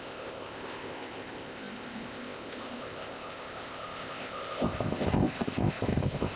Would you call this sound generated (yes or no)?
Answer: yes